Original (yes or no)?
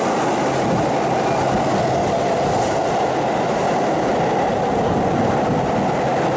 yes